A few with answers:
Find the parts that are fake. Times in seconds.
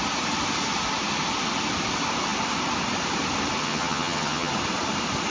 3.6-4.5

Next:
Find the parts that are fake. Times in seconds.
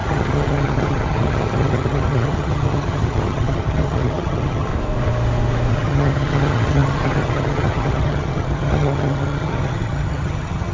0.0-4.7; 5.7-10.7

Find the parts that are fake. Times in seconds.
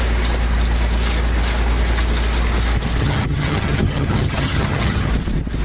3.0-5.1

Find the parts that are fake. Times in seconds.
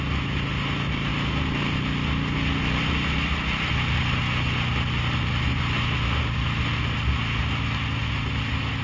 none